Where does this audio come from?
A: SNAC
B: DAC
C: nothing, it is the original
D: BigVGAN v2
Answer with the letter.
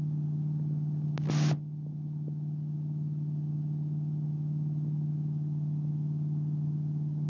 C